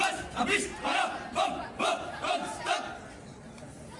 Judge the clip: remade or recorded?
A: recorded